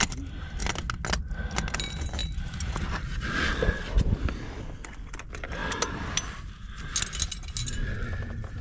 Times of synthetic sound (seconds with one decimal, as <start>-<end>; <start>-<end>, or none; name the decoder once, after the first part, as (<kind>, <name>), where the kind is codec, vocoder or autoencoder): none